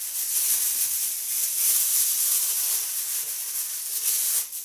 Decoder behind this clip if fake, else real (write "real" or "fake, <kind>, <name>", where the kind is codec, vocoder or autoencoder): real